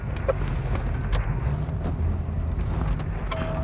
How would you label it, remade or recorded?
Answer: recorded